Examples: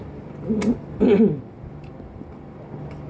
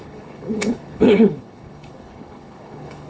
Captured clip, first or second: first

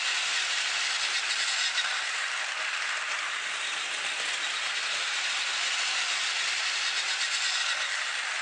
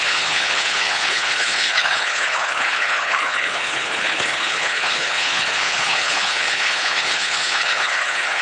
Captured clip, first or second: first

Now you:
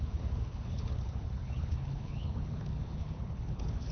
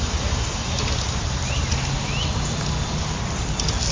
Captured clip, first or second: second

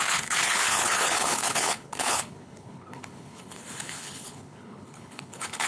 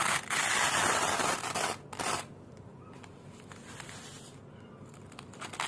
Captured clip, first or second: second